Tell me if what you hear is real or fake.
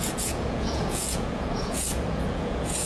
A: fake